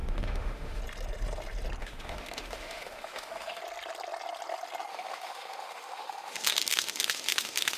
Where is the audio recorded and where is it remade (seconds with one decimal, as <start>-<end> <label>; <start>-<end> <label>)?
0.0-0.8 remade; 0.8-1.8 recorded; 1.8-3.6 remade; 3.6-4.9 recorded; 4.9-7.8 remade